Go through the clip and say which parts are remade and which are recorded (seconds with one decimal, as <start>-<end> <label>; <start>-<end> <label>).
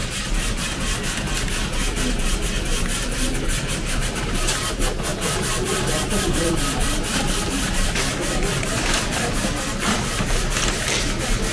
0.0-3.4 recorded; 3.4-11.5 remade